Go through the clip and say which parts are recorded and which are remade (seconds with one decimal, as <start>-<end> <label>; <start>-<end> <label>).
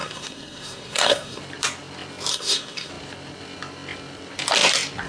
0.0-1.4 remade; 1.4-2.3 recorded; 2.3-2.9 remade; 2.9-5.1 recorded